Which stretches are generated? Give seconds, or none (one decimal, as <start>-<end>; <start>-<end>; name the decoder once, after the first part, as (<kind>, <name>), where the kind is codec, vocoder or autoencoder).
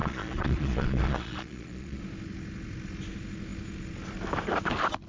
0.0-2.0 (vocoder, Vocos)